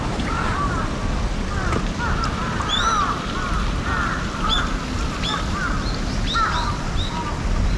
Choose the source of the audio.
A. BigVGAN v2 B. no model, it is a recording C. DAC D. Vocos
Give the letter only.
B